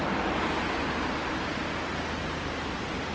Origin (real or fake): real